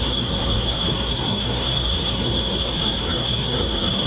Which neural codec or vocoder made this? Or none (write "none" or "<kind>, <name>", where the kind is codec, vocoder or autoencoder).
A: codec, SNAC